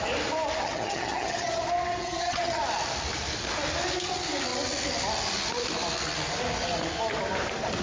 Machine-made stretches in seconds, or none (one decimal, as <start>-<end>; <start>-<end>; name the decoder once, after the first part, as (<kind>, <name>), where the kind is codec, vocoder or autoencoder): 0.6-1.6 (vocoder, HiFi-GAN); 2.0-2.6